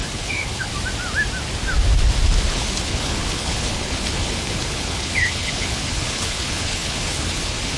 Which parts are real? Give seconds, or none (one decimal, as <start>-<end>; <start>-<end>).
0.7-2.5